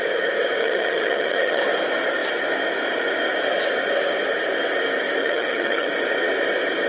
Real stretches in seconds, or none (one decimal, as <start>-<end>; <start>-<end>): 0.0-0.6; 1.6-5.2; 5.9-6.9